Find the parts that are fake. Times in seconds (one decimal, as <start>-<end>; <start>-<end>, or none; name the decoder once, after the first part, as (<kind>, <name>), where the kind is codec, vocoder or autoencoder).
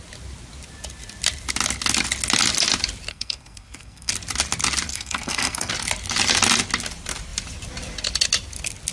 3.1-4.1 (codec, SNAC); 4.9-5.7